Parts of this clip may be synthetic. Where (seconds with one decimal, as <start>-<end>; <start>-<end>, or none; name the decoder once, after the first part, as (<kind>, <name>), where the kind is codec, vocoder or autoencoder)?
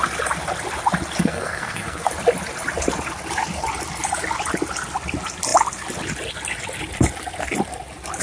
1.2-2.1 (codec, SNAC)